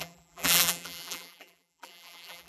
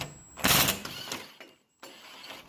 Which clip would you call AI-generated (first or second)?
first